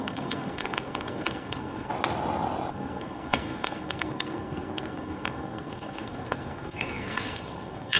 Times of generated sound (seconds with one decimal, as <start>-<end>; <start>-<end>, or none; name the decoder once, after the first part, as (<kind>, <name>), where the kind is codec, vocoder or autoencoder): 0.0-1.9 (codec, SNAC); 2.7-8.0